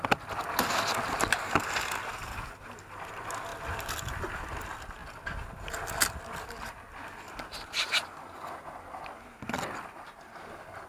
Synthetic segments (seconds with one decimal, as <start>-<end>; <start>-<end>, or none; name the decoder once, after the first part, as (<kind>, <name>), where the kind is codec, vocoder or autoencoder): none